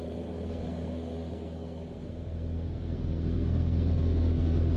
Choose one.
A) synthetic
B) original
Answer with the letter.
A